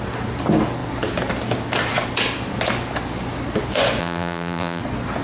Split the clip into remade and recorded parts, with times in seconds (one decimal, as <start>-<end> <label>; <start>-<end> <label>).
0.0-4.0 recorded; 4.0-4.8 remade; 4.8-5.2 recorded